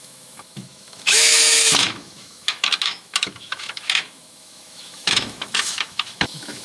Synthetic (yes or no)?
yes